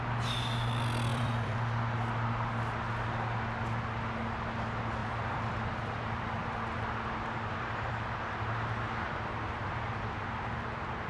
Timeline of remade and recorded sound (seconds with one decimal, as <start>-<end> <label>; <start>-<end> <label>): 0.0-1.1 recorded; 1.1-1.6 remade; 1.6-5.0 recorded; 5.0-8.1 remade; 8.1-11.1 recorded